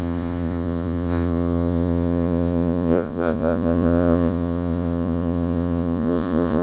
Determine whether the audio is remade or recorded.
remade